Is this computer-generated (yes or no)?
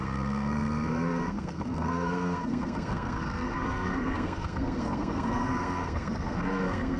yes